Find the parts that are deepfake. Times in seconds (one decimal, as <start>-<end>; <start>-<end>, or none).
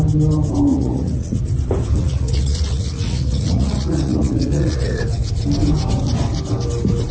0.7-1.4; 2.0-5.0